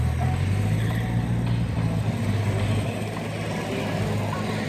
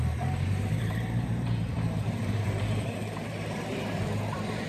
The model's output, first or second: second